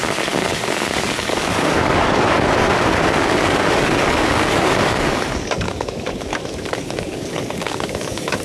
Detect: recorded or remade remade